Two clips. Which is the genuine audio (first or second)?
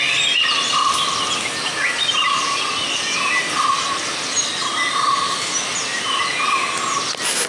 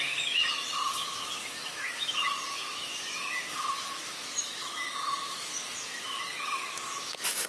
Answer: first